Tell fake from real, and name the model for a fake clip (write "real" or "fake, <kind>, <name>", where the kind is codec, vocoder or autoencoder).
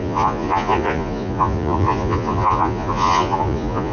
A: fake, vocoder, Vocos